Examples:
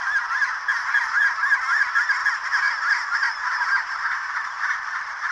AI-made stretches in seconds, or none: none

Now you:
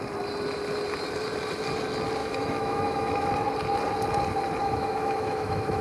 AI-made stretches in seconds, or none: 2.2-3.3 (autoencoder, DAC-VAE); 4.6-5.8

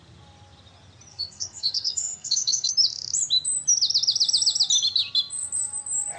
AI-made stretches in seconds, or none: 1.1-2.7 (codec, SNAC)

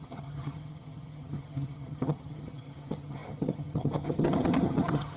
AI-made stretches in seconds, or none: 0.0-5.2 (vocoder, HiFi-GAN)

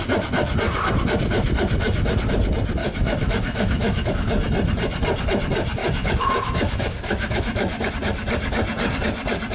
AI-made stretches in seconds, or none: 2.8-4.1 (autoencoder, DAC-VAE); 5.8-7.9

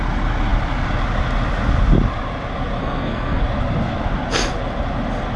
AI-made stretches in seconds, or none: 2.8-3.4 (codec, SNAC)